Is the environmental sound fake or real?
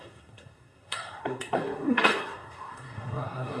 fake